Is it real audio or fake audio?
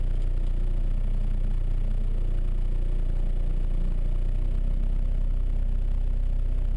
real